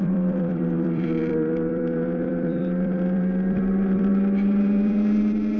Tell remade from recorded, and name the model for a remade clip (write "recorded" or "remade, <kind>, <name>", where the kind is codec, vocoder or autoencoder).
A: remade, vocoder, BigVGAN v2